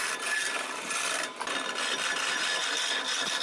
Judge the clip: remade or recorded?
recorded